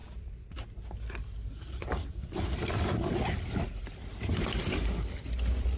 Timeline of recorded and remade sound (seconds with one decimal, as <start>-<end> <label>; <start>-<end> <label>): 0.0-5.8 recorded